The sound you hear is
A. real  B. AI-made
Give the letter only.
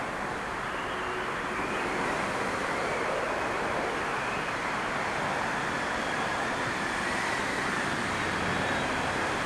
A